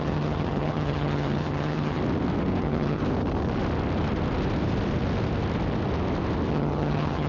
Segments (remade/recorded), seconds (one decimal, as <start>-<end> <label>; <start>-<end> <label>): 0.0-2.0 remade; 2.0-2.6 recorded; 2.6-3.0 remade; 3.0-6.5 recorded; 6.5-7.3 remade